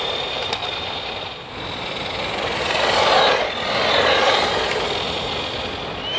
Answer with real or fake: real